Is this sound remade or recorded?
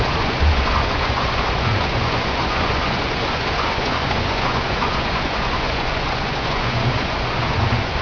remade